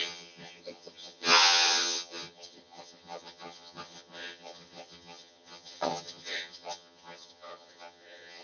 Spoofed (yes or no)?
yes